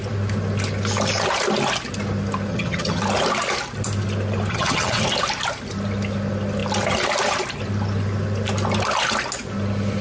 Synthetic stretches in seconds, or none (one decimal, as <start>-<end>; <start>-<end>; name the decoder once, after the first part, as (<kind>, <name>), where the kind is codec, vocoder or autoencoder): 2.5-3.0 (vocoder, HiFi-GAN); 4.5-5.0